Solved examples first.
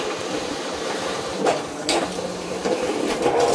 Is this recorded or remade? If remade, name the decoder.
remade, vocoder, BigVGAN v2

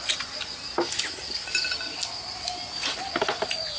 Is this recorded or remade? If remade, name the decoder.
recorded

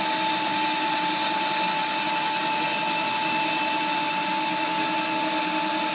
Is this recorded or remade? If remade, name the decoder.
recorded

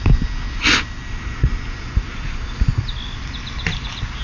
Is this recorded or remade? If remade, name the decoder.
recorded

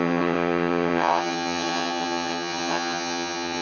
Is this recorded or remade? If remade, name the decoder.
remade, vocoder, HiFi-GAN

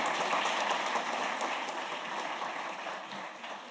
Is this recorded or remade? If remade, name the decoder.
recorded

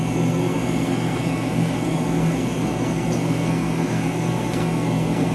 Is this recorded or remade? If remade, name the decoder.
remade, codec, SNAC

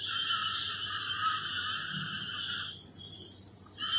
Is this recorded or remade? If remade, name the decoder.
remade, vocoder, BigVGAN v2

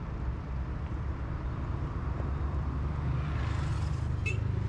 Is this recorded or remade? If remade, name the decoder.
recorded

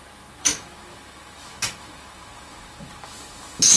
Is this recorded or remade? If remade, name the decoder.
remade, autoencoder, DAC-VAE